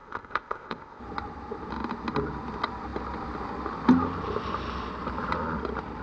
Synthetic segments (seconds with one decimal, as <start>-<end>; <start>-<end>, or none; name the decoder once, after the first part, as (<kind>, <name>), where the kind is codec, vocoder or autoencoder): 0.0-1.0 (codec, ZipCodec)